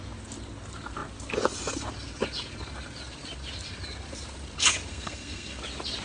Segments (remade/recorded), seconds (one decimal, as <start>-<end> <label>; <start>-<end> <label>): 0.0-4.9 recorded; 4.9-5.6 remade; 5.6-6.0 recorded